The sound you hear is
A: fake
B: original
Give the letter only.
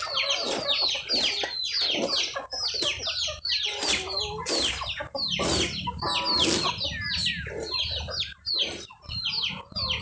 B